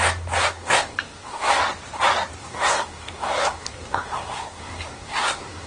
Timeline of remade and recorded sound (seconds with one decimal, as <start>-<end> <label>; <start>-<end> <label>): 0.0-0.4 recorded; 0.4-1.5 remade; 1.5-2.4 recorded; 2.4-5.7 remade